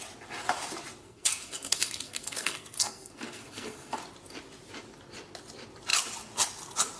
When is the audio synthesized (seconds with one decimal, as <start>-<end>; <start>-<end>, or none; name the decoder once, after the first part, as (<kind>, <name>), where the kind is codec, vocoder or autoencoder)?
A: 1.0-4.0 (codec, SNAC)